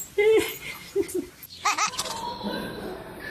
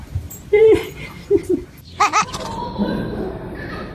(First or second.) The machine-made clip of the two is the second